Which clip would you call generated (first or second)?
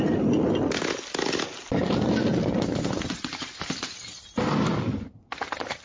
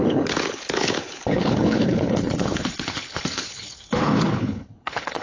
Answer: second